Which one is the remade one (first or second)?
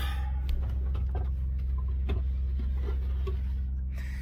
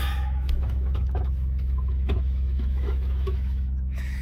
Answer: second